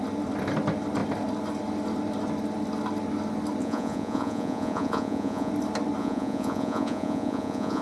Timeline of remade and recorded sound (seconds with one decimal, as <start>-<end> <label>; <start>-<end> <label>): 0.0-3.6 recorded; 3.6-5.5 remade; 5.5-6.0 recorded; 6.0-7.8 remade